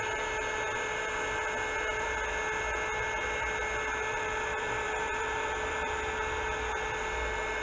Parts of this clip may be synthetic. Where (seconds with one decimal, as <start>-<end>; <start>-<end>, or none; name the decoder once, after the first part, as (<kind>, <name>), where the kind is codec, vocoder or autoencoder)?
1.9-2.4 (vocoder, BigVGAN v2); 4.1-6.0